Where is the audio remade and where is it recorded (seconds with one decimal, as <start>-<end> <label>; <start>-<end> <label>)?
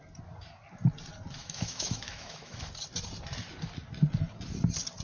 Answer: 0.0-1.4 recorded; 1.4-2.7 remade; 2.7-5.0 recorded